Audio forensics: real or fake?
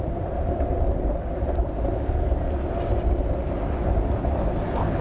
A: real